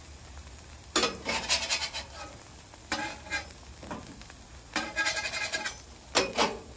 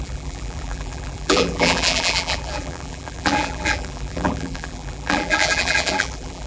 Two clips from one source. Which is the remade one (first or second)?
second